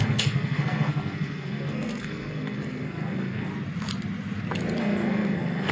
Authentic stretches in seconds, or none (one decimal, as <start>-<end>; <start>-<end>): 3.5-4.8